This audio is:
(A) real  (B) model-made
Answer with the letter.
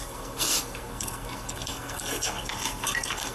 B